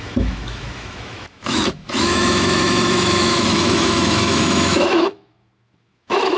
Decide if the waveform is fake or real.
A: fake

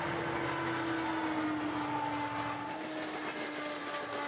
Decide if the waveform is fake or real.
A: real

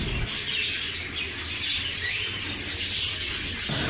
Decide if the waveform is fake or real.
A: real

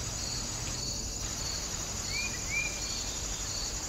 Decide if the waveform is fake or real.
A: real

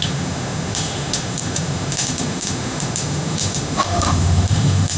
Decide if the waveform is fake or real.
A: fake